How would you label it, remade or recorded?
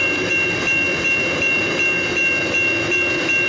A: recorded